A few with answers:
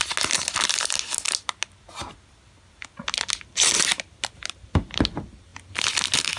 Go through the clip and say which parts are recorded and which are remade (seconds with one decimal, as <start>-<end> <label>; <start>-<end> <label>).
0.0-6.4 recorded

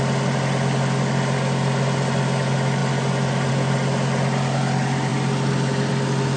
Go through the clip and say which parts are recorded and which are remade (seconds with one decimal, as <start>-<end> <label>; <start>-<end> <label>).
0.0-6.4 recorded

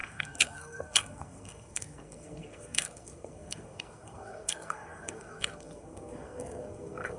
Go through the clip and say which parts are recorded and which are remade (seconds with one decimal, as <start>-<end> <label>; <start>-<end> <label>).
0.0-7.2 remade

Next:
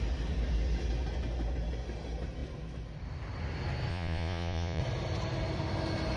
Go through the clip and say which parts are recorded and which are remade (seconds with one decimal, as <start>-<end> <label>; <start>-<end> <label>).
0.0-3.9 recorded; 3.9-4.8 remade; 4.8-6.2 recorded